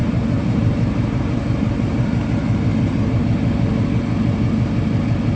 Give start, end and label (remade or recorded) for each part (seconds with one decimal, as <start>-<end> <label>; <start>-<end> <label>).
0.0-3.2 remade; 3.2-5.4 recorded